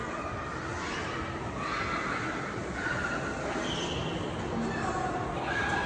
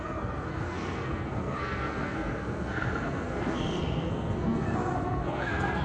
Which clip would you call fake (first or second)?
second